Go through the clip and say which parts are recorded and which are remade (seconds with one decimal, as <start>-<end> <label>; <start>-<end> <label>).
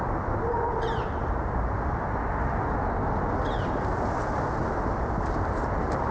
0.0-6.1 recorded